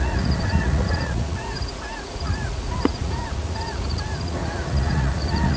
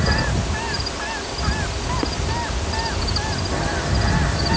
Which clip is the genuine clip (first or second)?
second